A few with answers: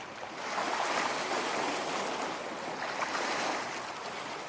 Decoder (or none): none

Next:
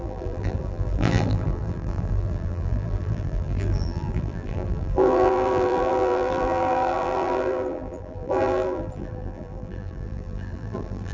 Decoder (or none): vocoder, BigVGAN v2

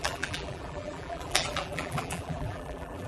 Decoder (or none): vocoder, BigVGAN v2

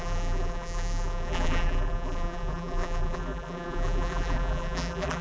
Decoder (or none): vocoder, BigVGAN v2